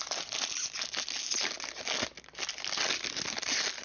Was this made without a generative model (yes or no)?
yes